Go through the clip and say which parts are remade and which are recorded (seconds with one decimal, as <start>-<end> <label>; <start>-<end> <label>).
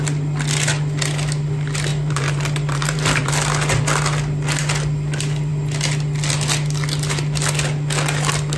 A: 0.0-1.9 recorded; 1.9-3.3 remade; 3.3-8.6 recorded